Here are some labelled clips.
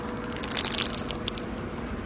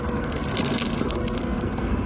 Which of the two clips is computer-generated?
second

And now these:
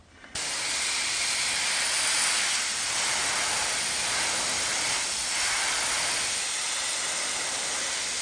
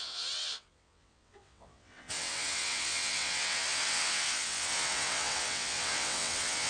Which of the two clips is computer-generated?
second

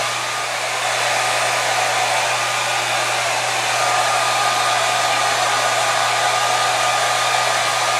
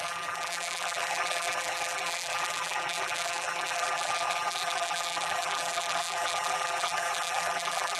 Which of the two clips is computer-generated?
second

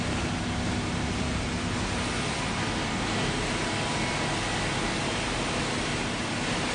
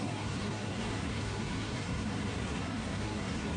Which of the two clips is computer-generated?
second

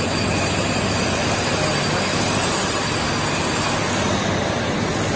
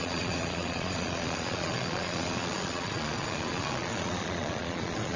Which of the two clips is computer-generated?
second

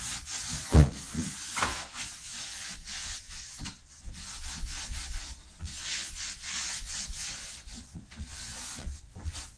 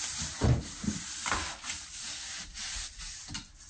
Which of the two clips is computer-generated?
first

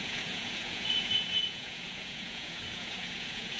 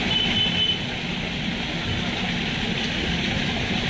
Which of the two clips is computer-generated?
first